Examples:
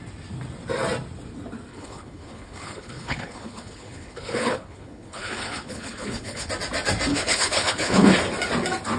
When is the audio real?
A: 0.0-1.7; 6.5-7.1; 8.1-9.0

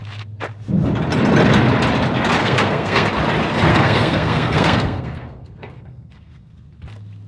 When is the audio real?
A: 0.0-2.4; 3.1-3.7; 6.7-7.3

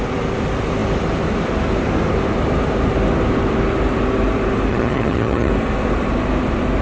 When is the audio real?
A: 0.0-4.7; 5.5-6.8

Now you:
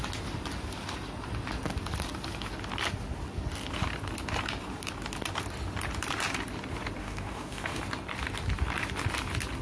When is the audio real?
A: 0.0-7.0; 7.8-9.6

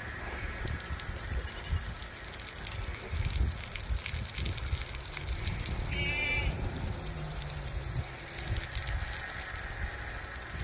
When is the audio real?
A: 0.6-6.3; 8.0-10.6

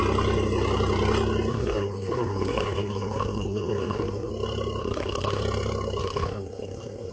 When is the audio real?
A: 0.0-1.5; 4.3-4.8; 5.4-6.0

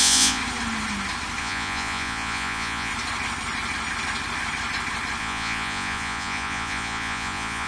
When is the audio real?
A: 0.4-1.4; 2.9-5.2